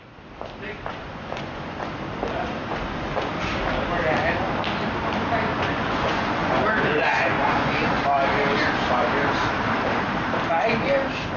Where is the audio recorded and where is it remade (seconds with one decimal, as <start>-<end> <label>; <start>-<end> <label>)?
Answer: 0.0-0.9 recorded; 0.9-1.9 remade; 1.9-2.7 recorded; 2.7-3.3 remade; 3.3-5.5 recorded; 5.5-8.0 remade; 8.0-11.4 recorded